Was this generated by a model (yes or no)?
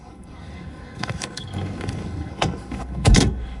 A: yes